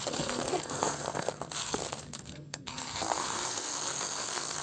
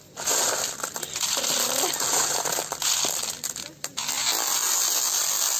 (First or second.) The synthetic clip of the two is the first